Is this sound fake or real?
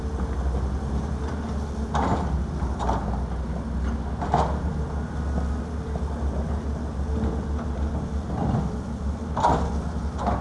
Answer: real